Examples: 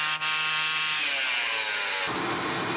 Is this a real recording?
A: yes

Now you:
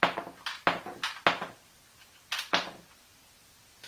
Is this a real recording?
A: yes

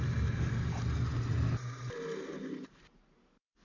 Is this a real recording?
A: yes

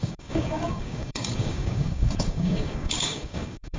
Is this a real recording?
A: no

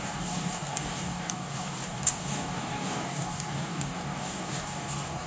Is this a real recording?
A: no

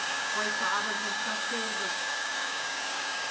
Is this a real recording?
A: no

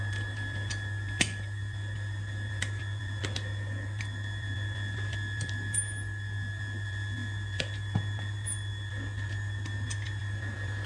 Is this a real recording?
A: yes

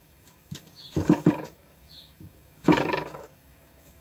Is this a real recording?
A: no